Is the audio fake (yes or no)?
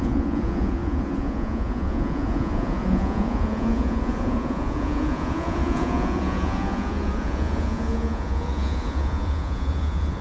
yes